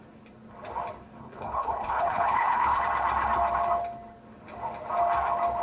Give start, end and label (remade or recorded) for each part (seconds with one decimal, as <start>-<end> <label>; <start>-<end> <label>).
0.0-1.2 recorded; 1.2-2.8 remade; 2.8-5.6 recorded

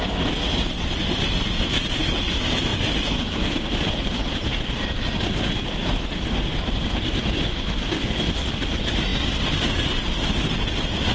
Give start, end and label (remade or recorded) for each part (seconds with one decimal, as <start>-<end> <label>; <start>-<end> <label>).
0.0-11.1 recorded

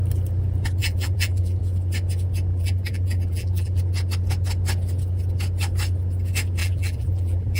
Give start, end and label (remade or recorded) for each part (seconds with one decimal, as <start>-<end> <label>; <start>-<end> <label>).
0.0-0.8 recorded; 0.8-1.6 remade; 1.6-2.5 recorded; 2.5-3.8 remade; 3.8-6.6 recorded; 6.6-7.6 remade

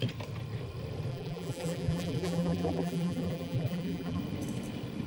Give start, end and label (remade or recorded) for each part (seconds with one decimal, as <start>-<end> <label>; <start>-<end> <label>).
0.0-1.1 recorded; 1.1-4.2 remade; 4.2-5.1 recorded

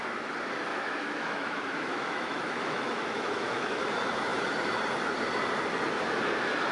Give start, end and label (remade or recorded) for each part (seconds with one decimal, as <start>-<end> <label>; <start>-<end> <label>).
0.0-0.7 recorded; 0.7-3.8 remade; 3.8-6.7 recorded

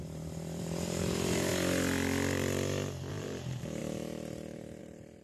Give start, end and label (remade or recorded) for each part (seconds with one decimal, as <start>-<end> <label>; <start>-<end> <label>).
0.0-1.5 remade; 1.5-3.1 recorded; 3.1-3.8 remade; 3.8-4.8 recorded; 4.8-5.2 remade